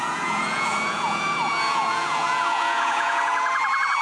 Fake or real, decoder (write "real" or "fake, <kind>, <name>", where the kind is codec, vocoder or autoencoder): fake, vocoder, Vocos